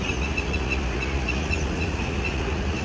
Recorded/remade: remade